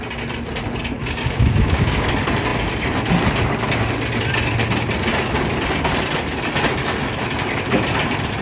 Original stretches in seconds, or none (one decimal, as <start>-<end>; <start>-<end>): 0.0-1.0; 2.1-8.4